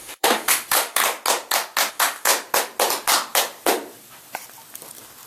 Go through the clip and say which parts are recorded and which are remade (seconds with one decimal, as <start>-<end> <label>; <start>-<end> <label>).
0.0-1.0 remade; 1.0-1.9 recorded; 1.9-2.3 remade; 2.3-5.3 recorded